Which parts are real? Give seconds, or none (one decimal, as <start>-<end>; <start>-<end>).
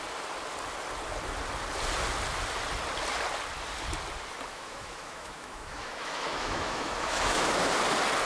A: 0.0-4.5; 7.7-8.2